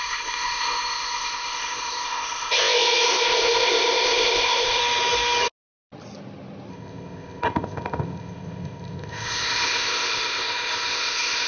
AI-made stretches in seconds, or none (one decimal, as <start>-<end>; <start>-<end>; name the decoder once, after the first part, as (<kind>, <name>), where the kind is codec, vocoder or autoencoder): 0.0-4.8 (codec, ZipCodec); 6.7-11.5